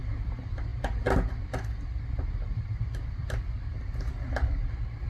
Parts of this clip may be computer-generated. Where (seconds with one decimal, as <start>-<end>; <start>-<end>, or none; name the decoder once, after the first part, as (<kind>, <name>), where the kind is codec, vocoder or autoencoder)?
none